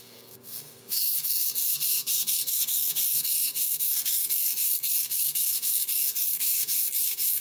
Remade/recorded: remade